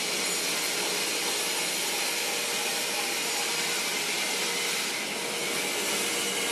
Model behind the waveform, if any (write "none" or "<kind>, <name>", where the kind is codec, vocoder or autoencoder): none